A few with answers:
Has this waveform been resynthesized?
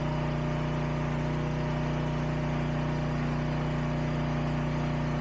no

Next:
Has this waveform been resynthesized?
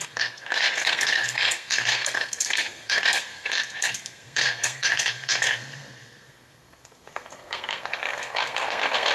yes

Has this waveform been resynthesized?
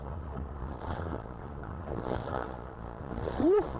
yes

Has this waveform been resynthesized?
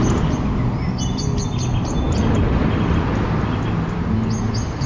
no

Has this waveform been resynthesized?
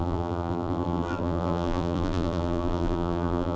yes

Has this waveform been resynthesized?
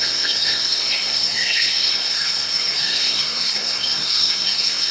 yes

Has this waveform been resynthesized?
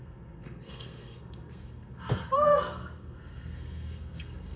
yes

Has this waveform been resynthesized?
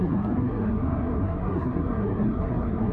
yes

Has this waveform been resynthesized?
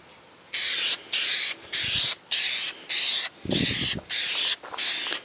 no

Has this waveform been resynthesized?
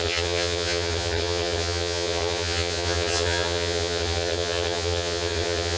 yes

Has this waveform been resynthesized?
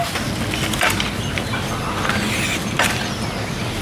no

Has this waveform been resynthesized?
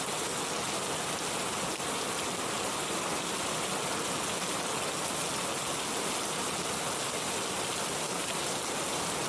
no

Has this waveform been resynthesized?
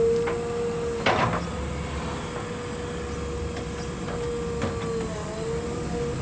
no